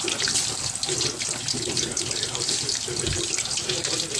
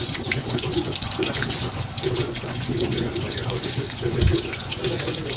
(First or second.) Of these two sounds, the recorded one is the first